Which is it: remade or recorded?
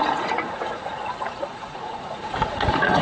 remade